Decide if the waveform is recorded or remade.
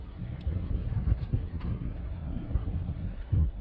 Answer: remade